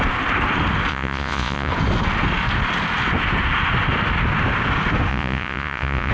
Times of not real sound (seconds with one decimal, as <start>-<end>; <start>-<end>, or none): 0.9-1.7; 5.1-6.1

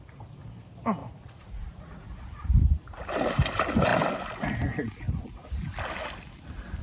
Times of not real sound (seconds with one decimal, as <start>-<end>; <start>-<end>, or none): 1.0-2.1

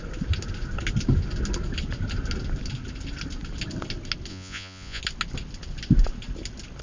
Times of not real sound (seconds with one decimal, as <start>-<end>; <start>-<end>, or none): 4.3-5.0